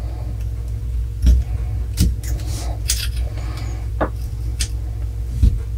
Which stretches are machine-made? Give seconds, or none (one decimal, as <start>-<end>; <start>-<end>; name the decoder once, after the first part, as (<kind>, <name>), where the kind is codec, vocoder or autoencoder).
none